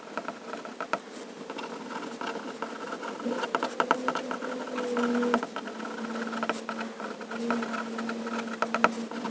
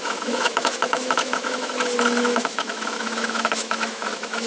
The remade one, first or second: second